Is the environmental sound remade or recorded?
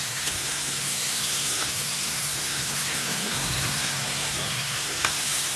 remade